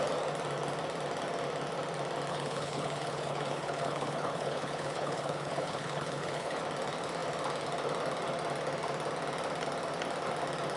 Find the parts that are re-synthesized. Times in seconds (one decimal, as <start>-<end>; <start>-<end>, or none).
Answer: 2.3-6.6